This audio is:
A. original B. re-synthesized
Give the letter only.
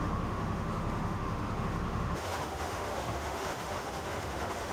B